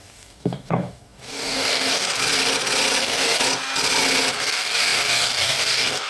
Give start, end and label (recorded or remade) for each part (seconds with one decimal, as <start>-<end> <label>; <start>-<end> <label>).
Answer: 0.0-2.2 remade; 2.2-3.0 recorded; 3.0-3.4 remade; 3.4-4.3 recorded; 4.3-6.1 remade